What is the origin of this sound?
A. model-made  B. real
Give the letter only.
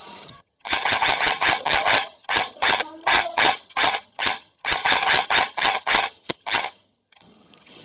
A